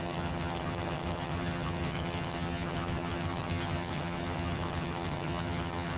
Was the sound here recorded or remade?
remade